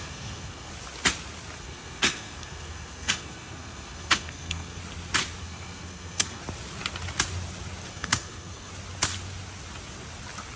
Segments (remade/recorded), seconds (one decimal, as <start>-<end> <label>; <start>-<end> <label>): 0.0-0.7 remade; 0.7-1.6 recorded; 1.6-4.8 remade; 4.8-5.4 recorded; 5.4-6.4 remade; 6.4-7.9 recorded; 7.9-8.7 remade; 8.7-10.6 recorded